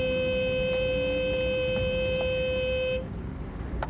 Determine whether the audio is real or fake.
real